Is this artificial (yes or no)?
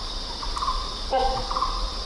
yes